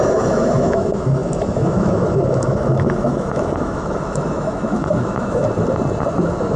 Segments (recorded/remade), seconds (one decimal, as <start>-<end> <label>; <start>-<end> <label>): 0.0-5.4 remade; 5.4-6.1 recorded; 6.1-6.6 remade